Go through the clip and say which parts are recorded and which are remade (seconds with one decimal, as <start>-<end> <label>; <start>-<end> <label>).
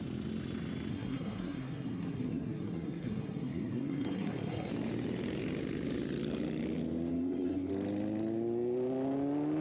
0.0-0.9 recorded; 0.9-4.7 remade; 4.7-7.1 recorded; 7.1-7.7 remade; 7.7-9.6 recorded